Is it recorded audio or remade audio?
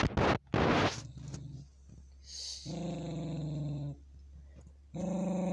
recorded